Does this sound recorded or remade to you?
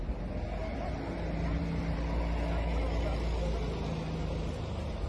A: recorded